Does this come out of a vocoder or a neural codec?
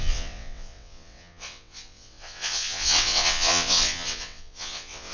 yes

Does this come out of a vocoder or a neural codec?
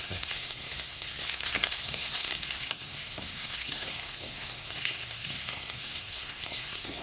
yes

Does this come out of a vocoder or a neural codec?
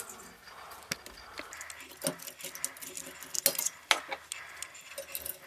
no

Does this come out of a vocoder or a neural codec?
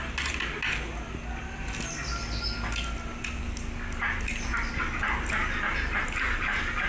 no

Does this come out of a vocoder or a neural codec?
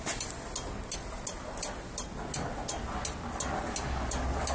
no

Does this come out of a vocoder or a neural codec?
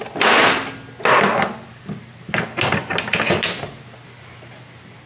no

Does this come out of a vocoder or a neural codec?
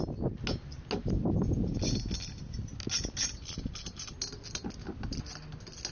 no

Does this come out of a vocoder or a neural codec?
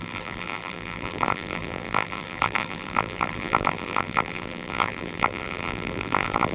yes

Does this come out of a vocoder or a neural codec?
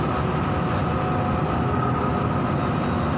no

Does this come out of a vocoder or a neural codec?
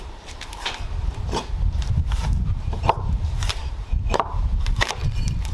yes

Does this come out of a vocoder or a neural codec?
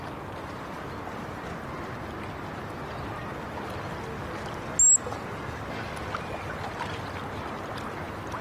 no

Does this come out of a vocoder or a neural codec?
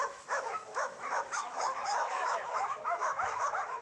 yes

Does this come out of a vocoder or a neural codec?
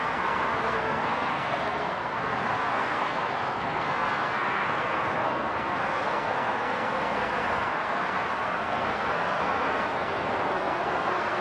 yes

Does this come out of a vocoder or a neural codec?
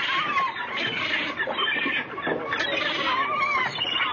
no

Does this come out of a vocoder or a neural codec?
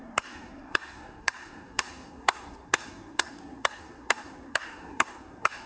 yes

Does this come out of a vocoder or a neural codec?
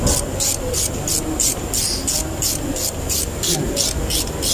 no